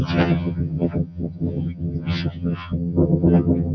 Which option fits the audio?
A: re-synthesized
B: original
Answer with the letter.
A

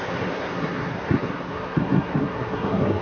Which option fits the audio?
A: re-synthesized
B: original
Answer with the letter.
A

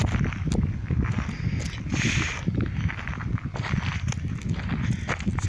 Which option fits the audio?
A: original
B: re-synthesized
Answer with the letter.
A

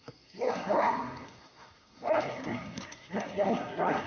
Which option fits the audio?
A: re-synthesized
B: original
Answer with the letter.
A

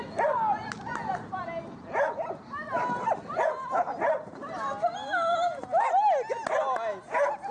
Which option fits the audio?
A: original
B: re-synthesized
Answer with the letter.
A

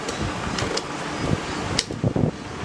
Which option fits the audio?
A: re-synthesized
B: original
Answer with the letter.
B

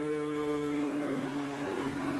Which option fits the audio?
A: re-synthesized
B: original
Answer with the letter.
A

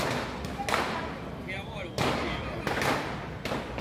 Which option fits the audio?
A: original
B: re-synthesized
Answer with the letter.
A